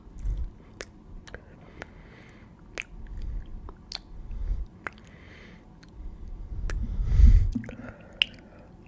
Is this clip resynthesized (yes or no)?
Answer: no